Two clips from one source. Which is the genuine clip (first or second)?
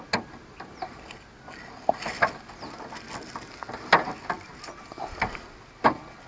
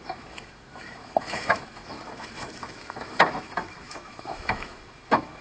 first